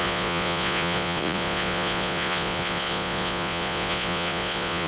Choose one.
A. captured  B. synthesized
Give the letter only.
B